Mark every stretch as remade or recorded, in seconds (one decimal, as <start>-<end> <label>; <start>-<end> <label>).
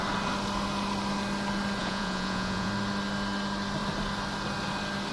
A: 0.0-1.8 recorded; 1.8-2.7 remade; 2.7-5.1 recorded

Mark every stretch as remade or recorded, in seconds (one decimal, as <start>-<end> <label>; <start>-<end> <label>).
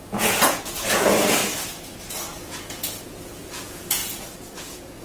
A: 0.0-1.4 remade; 1.4-2.3 recorded; 2.3-5.0 remade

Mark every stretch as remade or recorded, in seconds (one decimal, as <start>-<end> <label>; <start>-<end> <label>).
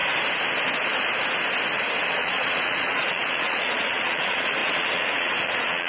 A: 0.0-2.1 recorded; 2.1-5.9 remade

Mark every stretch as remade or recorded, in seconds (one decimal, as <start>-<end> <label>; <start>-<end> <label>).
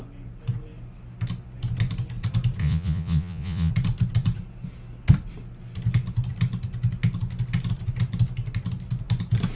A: 0.0-2.6 recorded; 2.6-3.7 remade; 3.7-9.6 recorded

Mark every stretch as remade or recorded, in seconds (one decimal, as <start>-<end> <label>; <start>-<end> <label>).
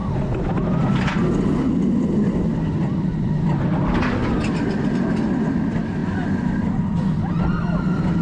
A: 0.0-8.2 recorded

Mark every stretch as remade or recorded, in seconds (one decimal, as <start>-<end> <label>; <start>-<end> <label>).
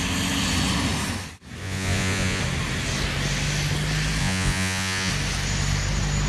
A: 0.0-1.6 recorded; 1.6-2.4 remade; 2.4-4.2 recorded; 4.2-5.1 remade; 5.1-6.3 recorded